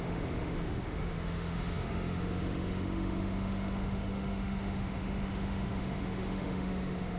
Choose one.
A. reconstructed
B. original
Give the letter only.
A